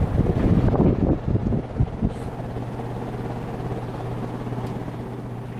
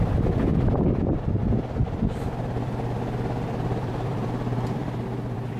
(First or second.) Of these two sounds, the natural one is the first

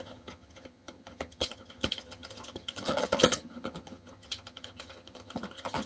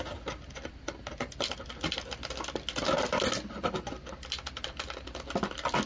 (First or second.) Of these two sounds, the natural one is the second